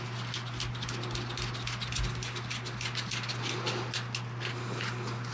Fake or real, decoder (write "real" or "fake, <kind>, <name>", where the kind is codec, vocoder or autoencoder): real